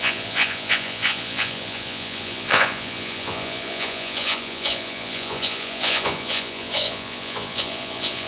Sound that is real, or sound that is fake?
fake